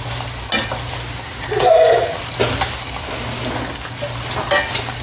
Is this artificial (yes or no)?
no